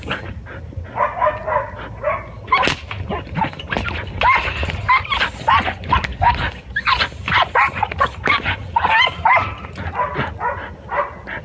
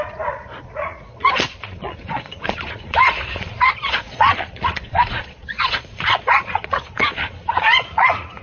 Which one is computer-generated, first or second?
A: second